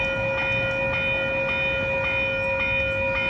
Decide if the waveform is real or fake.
real